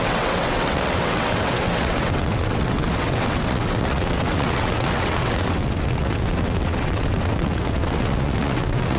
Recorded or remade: remade